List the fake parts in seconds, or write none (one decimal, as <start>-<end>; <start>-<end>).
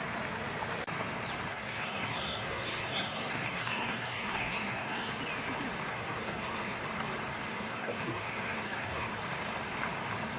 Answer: 1.5-5.1; 5.9-6.8; 7.5-9.1